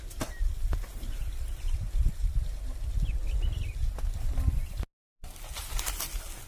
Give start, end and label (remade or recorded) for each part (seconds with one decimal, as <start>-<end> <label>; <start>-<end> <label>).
0.0-0.5 recorded; 0.5-2.8 remade; 2.8-6.5 recorded